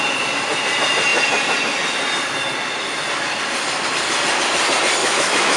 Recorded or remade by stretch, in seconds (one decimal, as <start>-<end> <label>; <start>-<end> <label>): 0.0-5.0 recorded; 5.0-5.6 remade